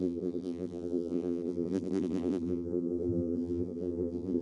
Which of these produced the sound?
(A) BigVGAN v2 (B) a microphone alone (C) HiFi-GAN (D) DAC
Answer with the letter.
A